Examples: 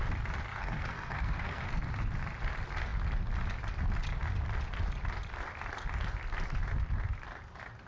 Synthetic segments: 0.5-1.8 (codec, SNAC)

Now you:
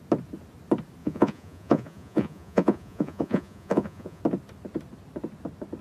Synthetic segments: 1.0-4.2 (vocoder, Vocos)

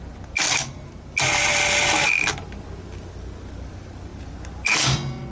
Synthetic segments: none

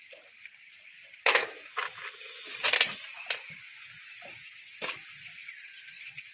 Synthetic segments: none

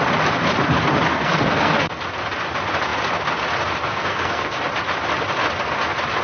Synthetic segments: 1.1-1.9 (codec, SNAC); 3.9-4.6

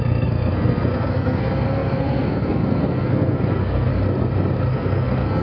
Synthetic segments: 0.0-3.9 (codec, SNAC); 4.7-5.4

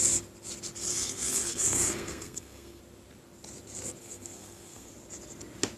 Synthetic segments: 0.9-2.8 (codec, SNAC); 4.0-4.9

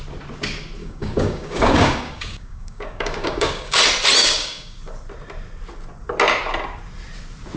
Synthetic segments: 0.8-3.8 (codec, DAC); 4.2-4.8